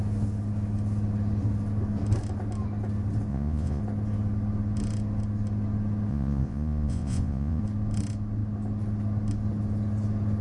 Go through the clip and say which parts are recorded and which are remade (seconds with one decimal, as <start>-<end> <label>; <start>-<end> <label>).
0.0-3.3 recorded; 3.3-3.8 remade; 3.8-6.1 recorded; 6.1-7.6 remade; 7.6-10.4 recorded